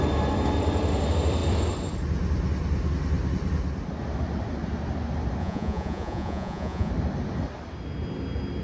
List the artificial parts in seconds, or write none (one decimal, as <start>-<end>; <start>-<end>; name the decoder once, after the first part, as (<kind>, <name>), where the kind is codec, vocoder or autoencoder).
5.4-6.9 (vocoder, Vocos)